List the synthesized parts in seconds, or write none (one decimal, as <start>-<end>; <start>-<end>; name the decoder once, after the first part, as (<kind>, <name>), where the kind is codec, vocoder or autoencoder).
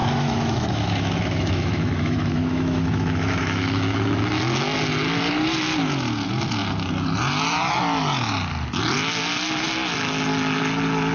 0.0-4.4 (autoencoder, DAC-VAE)